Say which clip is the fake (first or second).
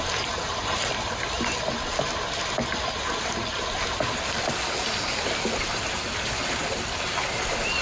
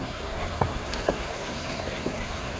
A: second